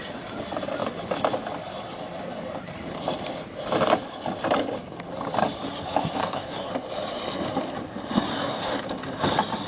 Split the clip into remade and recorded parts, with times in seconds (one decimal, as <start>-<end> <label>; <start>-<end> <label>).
0.0-6.2 recorded; 6.2-6.7 remade; 6.7-8.3 recorded; 8.3-8.8 remade; 8.8-9.7 recorded